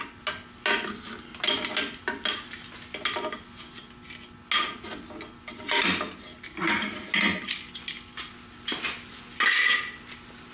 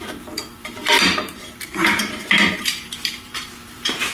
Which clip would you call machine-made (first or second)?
second